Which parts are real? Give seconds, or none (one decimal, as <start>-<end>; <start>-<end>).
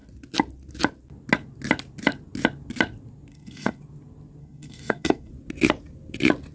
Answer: 0.0-3.3; 3.8-4.4; 5.3-6.5